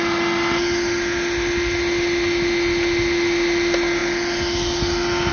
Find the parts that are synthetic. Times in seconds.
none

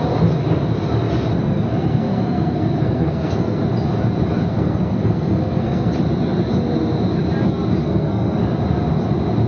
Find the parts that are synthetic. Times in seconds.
1.4-3.6 (codec, SNAC); 4.5-5.9; 7.8-8.4

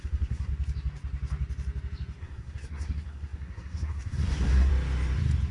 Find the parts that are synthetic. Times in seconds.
0.0-0.5 (codec, SNAC); 2.2-4.7

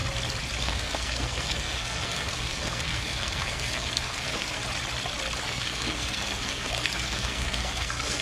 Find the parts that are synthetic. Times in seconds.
0.6-4.6 (codec, SNAC); 5.4-8.2